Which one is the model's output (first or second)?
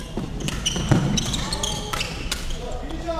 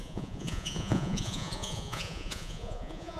second